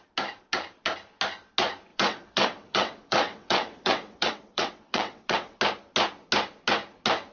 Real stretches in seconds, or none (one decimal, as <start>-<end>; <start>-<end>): 0.0-1.9; 5.6-7.3